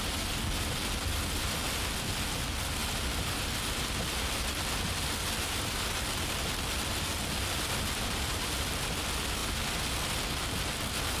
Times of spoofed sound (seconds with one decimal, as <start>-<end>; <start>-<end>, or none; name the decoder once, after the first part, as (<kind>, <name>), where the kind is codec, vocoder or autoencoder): none